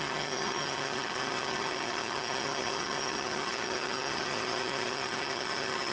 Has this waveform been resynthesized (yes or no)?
yes